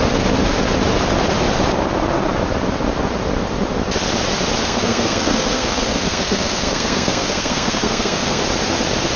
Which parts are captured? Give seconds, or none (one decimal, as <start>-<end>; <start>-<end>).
0.0-4.6; 8.4-9.2

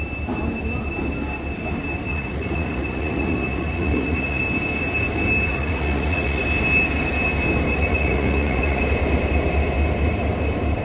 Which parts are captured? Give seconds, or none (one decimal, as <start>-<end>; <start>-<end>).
0.0-2.1; 4.4-5.5; 6.4-7.7; 8.8-10.8

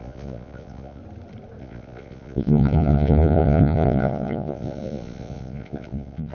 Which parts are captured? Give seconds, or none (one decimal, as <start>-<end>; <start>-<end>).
1.0-1.6

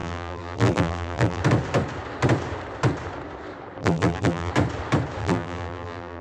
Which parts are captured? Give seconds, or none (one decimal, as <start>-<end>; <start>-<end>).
1.4-3.8; 4.5-5.2

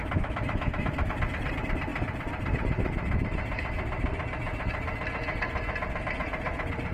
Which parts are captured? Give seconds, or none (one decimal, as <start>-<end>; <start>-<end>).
1.1-6.9

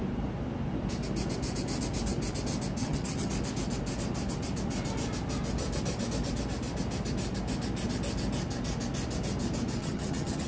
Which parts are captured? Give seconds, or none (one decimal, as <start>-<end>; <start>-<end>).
0.0-2.8; 3.3-9.8